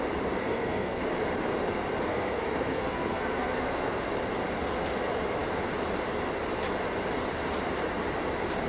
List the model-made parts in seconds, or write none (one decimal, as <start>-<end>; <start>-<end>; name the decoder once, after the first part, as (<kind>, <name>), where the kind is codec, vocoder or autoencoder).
0.4-1.0 (codec, SNAC); 2.1-4.1